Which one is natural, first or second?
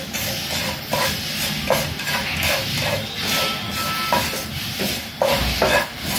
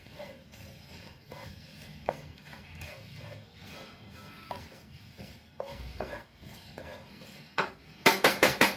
first